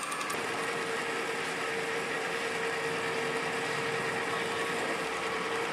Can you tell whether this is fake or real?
real